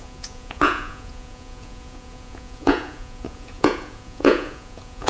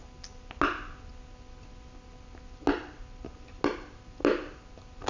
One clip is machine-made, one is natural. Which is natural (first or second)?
second